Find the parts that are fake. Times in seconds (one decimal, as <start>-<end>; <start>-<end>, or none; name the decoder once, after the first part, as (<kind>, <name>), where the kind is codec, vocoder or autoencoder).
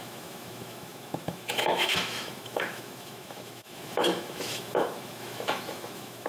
0.0-6.3 (autoencoder, DAC-VAE)